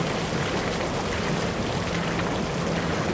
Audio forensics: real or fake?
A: real